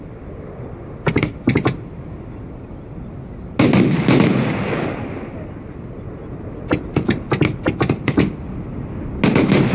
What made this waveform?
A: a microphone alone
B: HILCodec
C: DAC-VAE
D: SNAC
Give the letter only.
A